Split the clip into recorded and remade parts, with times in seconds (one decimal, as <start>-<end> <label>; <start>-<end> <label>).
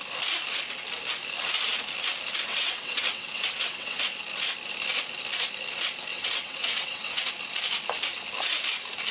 0.0-2.5 recorded; 2.5-4.0 remade; 4.0-6.1 recorded; 6.1-7.3 remade; 7.3-9.1 recorded